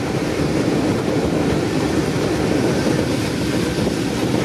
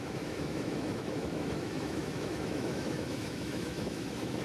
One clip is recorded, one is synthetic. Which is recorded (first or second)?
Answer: first